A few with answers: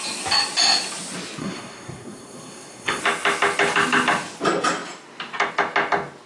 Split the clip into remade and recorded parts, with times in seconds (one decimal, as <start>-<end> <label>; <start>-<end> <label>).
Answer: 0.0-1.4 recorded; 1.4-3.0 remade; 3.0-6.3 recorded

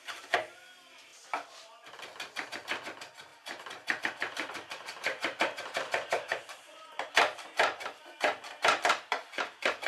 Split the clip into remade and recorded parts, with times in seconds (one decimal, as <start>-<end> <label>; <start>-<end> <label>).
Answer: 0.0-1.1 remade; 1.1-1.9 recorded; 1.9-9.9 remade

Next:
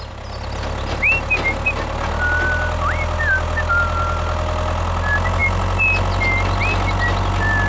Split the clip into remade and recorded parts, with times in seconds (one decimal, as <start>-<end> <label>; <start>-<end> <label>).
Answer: 0.0-7.7 recorded

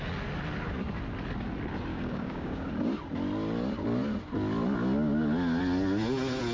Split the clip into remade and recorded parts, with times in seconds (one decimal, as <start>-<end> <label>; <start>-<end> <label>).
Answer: 0.0-1.9 recorded; 1.9-2.7 remade; 2.7-6.5 recorded

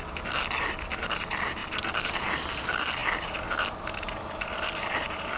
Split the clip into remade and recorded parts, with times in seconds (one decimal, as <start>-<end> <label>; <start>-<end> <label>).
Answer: 0.0-3.0 recorded; 3.0-4.5 remade; 4.5-5.4 recorded

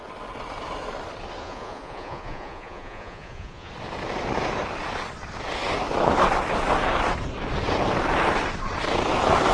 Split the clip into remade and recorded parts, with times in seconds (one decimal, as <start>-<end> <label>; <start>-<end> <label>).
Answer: 0.0-1.4 recorded; 1.4-3.7 remade; 3.7-9.5 recorded

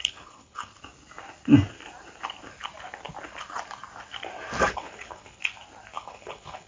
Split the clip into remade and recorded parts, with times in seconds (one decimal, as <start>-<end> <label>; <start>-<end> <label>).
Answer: 0.0-0.7 remade; 0.7-4.7 recorded; 4.7-5.4 remade; 5.4-6.0 recorded; 6.0-6.7 remade

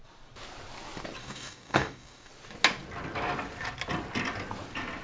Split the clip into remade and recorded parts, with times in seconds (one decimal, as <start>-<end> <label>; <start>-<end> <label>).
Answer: 0.0-1.2 recorded; 1.2-2.3 remade; 2.3-5.0 recorded